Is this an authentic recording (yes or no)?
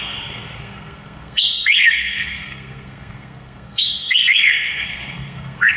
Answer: no